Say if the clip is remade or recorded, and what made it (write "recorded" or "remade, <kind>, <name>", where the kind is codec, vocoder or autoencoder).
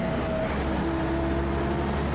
recorded